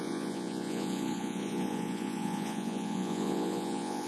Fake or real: fake